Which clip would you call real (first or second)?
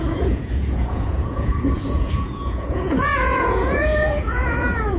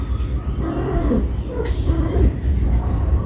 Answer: second